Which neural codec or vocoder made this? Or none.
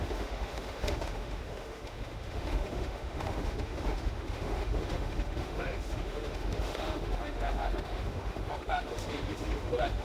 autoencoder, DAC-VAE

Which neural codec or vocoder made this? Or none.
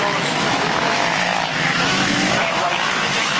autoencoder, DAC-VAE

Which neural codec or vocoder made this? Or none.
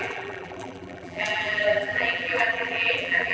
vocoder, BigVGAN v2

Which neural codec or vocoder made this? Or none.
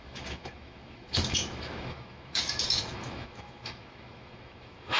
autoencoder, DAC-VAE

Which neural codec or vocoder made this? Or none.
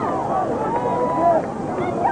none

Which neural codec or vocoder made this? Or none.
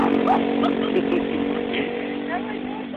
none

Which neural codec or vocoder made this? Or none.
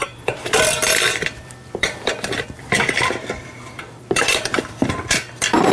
vocoder, BigVGAN v2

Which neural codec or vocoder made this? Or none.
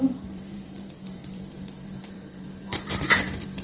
vocoder, BigVGAN v2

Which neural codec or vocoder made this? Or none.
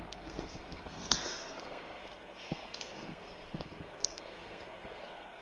codec, SNAC